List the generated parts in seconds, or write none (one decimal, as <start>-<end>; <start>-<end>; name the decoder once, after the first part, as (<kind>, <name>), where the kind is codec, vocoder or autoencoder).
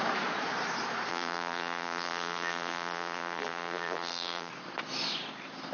1.1-4.5 (vocoder, BigVGAN v2)